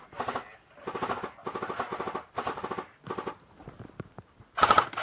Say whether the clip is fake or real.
real